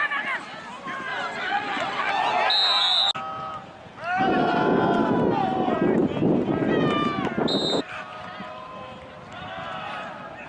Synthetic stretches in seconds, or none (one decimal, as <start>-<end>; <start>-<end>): 1.1-2.1